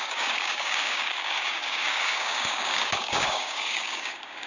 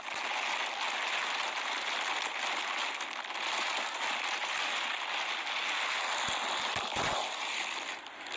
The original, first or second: second